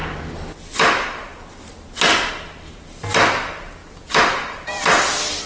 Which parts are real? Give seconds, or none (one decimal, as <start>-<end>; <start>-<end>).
0.0-3.8